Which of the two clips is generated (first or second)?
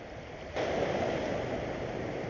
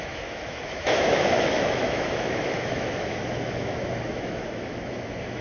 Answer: second